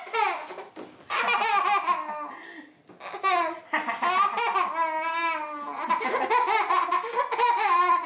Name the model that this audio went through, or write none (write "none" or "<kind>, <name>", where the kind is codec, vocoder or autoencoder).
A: none